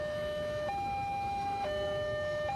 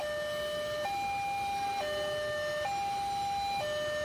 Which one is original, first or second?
second